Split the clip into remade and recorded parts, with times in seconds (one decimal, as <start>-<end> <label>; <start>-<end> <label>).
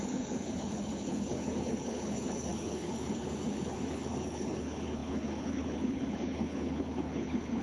0.0-7.6 remade